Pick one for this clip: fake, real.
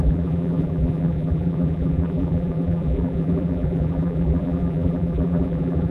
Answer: fake